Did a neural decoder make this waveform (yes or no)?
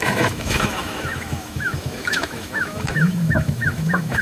yes